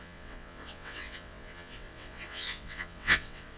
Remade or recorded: remade